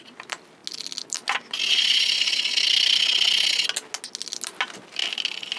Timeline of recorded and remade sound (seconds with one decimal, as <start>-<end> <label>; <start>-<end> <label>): 0.0-5.6 recorded